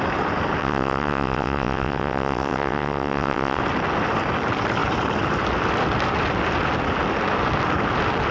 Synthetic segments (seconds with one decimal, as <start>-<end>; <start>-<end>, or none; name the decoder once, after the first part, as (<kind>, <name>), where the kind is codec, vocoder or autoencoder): 0.6-3.6 (vocoder, WaveNeXt)